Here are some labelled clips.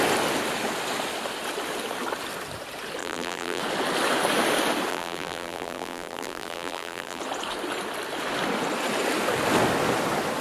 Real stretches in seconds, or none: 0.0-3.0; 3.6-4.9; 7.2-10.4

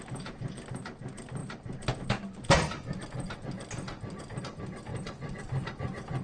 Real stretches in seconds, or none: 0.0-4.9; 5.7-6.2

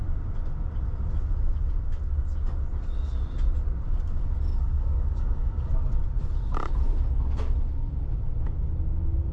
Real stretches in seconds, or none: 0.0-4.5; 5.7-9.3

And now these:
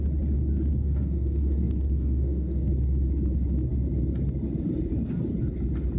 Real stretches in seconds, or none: 0.0-0.8; 2.7-6.0